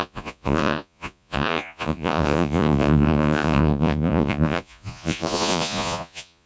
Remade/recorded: remade